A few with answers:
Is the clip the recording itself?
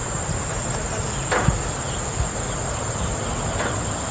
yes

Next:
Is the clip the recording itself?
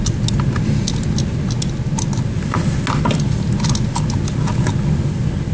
yes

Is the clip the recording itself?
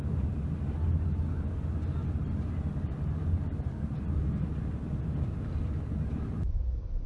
yes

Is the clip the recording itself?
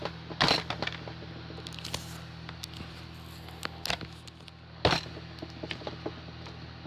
yes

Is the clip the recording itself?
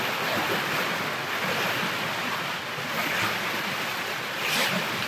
yes